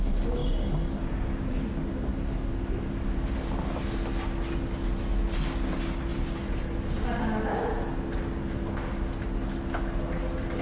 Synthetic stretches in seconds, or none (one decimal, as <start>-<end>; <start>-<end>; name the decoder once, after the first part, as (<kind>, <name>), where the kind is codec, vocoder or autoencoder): none